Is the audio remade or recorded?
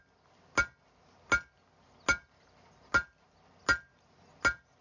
recorded